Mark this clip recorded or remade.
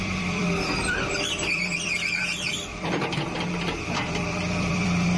remade